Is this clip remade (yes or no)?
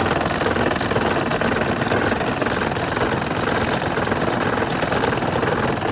no